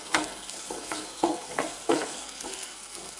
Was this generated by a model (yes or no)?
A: yes